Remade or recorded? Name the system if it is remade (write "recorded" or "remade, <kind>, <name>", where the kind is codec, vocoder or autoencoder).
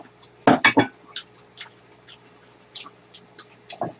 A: recorded